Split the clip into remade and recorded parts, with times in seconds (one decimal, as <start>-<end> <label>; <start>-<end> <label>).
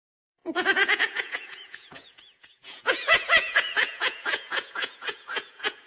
0.0-5.9 remade